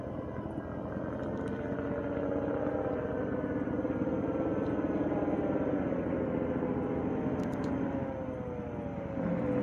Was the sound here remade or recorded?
recorded